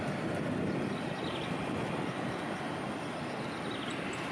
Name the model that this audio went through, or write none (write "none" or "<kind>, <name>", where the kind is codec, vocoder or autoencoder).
none